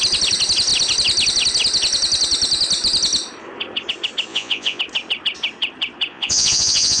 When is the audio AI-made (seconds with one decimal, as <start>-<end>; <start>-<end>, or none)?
4.3-4.8; 6.1-7.0